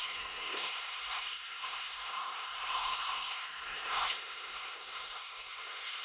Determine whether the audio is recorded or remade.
remade